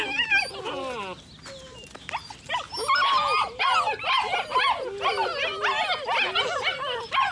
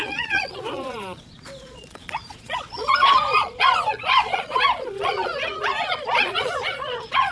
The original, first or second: first